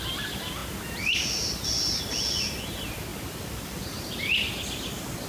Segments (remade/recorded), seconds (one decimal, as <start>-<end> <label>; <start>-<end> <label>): 0.0-3.1 recorded; 3.1-4.5 remade; 4.5-5.3 recorded